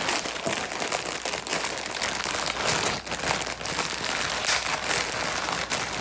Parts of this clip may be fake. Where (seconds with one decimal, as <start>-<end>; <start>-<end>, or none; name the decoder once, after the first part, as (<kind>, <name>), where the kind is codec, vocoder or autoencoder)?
none